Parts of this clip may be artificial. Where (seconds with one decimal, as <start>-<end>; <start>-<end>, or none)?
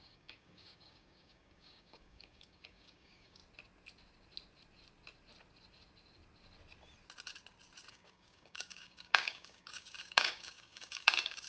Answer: 0.0-3.4; 7.9-11.5